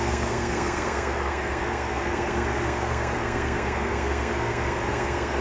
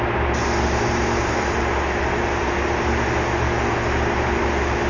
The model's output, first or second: first